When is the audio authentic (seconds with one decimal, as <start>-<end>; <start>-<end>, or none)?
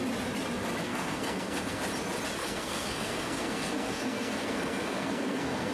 0.0-0.8; 1.8-2.4